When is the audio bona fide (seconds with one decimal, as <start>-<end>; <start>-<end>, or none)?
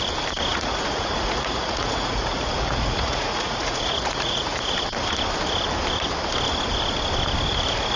0.0-0.5; 4.6-8.0